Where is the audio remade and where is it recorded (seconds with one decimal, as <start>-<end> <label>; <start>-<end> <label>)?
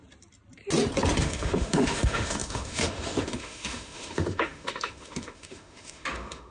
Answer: 0.0-1.2 recorded; 1.2-6.5 remade